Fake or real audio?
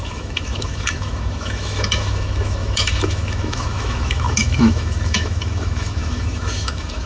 fake